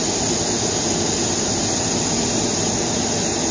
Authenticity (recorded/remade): recorded